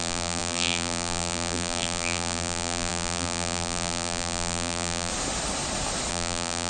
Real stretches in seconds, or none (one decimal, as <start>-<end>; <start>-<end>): 5.1-6.1